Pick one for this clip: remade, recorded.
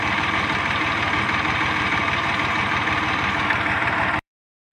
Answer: remade